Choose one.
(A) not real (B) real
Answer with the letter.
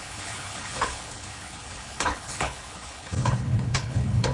A